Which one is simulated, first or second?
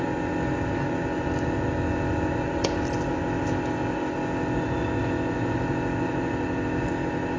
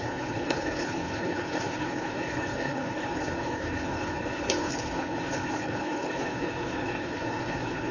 second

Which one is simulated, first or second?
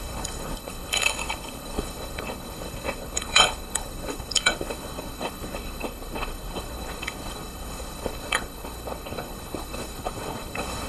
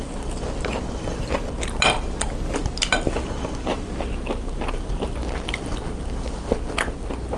first